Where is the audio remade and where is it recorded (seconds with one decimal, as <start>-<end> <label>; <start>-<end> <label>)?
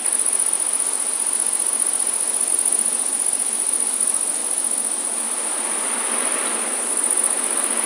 0.0-7.9 recorded